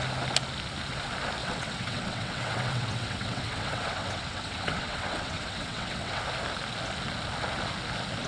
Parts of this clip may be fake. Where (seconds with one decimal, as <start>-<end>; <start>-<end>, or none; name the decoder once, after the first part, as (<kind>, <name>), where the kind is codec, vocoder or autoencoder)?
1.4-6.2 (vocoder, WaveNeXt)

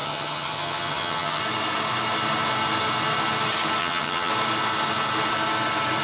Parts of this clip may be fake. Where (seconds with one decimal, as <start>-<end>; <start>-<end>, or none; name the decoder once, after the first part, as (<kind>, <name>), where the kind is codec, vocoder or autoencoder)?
0.0-1.4 (vocoder, HiFi-GAN); 3.8-4.3

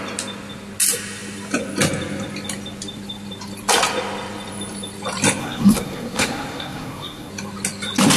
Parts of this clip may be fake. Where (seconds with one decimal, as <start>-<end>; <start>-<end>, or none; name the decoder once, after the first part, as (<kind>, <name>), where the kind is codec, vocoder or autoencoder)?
5.4-7.3 (codec, SNAC)

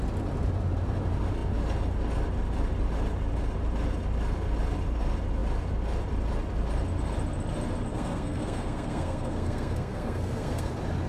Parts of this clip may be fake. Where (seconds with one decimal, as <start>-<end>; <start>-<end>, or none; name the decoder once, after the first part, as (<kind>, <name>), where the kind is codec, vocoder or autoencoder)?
7.9-10.7 (codec, SNAC)